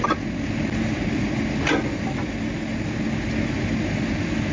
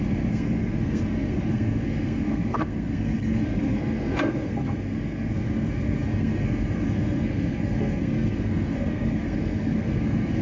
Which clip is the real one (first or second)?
first